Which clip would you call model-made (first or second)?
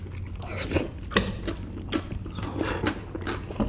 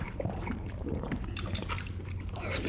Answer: second